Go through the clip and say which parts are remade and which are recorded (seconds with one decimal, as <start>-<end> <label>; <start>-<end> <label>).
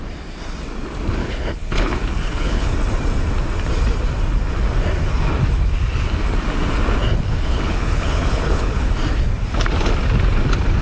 0.0-1.2 recorded; 1.2-2.7 remade; 2.7-7.1 recorded; 7.1-8.9 remade; 8.9-10.8 recorded